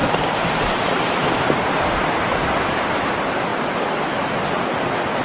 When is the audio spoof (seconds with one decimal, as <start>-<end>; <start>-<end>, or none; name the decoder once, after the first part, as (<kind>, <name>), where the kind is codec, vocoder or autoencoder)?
0.0-3.1 (vocoder, BigVGAN v2)